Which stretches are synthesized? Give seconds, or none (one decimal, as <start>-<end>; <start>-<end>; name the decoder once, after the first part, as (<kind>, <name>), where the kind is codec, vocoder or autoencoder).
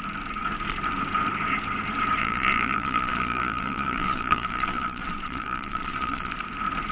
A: 2.2-6.3 (vocoder, Vocos)